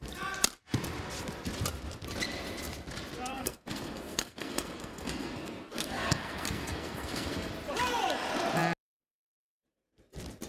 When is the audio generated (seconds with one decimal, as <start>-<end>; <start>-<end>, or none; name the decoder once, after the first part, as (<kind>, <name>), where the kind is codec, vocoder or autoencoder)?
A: 3.3-7.5 (codec, SNAC)